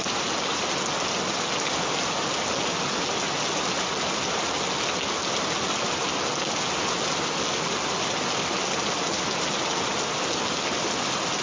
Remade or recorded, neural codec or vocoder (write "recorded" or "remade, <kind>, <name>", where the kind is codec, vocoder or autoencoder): recorded